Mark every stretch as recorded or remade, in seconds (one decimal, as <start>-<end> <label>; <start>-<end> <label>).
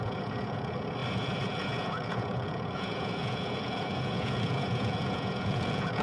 0.0-6.0 remade